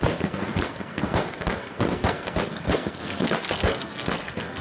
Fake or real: fake